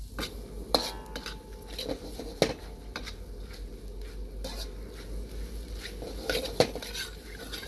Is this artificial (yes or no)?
no